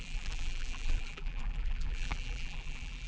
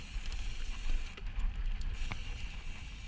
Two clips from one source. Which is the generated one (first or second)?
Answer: first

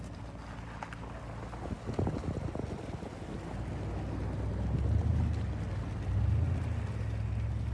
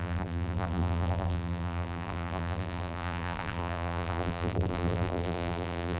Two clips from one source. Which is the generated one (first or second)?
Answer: second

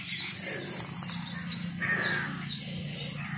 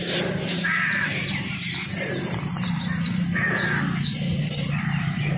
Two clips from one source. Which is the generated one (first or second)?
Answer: second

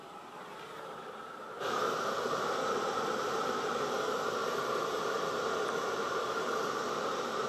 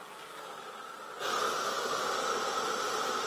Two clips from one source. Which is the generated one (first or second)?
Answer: first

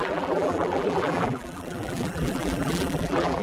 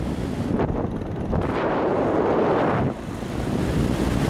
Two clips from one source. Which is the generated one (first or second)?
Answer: first